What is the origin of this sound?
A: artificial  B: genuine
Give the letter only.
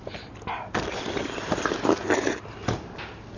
B